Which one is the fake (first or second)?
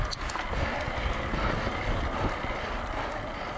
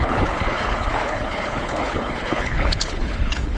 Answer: second